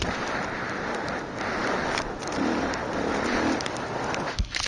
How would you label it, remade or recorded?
remade